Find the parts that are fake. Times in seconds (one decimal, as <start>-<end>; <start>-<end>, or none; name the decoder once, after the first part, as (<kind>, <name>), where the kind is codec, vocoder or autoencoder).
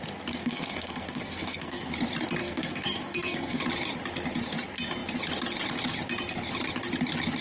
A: 0.4-1.9 (codec, SNAC); 2.4-3.6